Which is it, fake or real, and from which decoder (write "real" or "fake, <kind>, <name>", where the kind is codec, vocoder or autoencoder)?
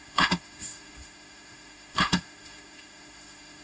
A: fake, autoencoder, DAC-VAE